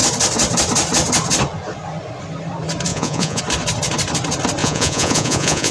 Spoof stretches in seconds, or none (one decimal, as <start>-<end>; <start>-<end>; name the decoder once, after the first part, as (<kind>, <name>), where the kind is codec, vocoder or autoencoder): 2.9-3.4 (vocoder, Vocos); 4.6-5.7